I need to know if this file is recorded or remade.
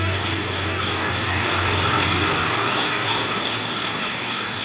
remade